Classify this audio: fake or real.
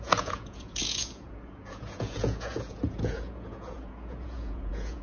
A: fake